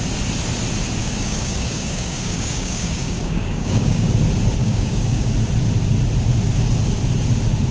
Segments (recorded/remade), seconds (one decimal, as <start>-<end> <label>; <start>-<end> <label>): 0.0-1.0 recorded; 1.0-4.1 remade; 4.1-4.6 recorded; 4.6-5.3 remade; 5.3-7.7 recorded